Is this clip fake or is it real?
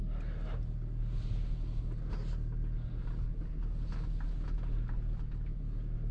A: real